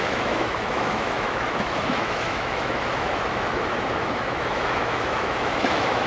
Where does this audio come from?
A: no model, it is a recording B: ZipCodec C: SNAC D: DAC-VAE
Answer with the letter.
D